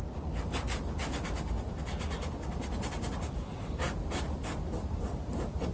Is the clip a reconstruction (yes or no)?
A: no